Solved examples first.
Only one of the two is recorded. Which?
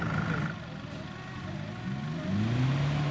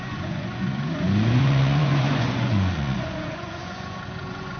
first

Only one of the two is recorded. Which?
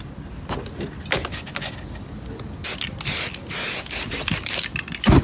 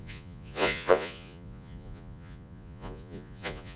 first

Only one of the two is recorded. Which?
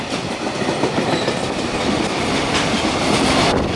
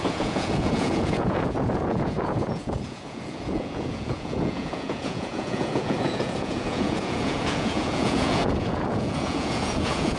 first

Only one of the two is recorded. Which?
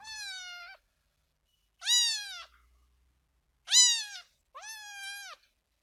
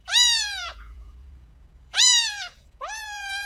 first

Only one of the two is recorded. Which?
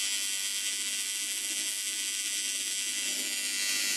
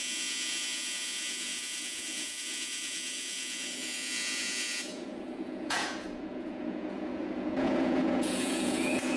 first